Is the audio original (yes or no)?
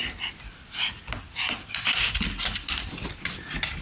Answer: yes